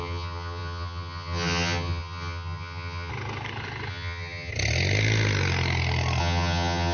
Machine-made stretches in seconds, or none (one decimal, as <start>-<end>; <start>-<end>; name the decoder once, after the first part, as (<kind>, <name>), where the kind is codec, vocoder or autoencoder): 0.0-3.1 (vocoder, HiFi-GAN); 3.9-4.5; 6.2-6.9